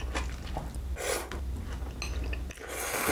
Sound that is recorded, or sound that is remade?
recorded